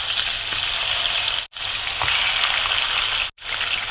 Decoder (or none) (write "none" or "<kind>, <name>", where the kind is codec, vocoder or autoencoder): none